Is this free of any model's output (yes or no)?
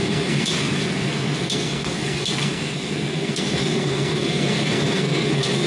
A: no